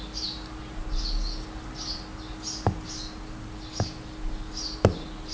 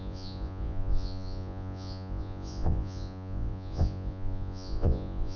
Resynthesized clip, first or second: second